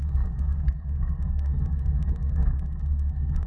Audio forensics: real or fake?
fake